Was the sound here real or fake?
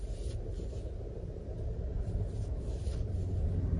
real